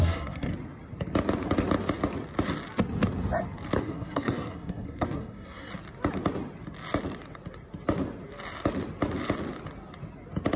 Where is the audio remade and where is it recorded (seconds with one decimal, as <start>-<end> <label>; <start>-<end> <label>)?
0.0-0.5 remade; 0.5-3.8 recorded; 3.8-5.7 remade; 5.7-10.6 recorded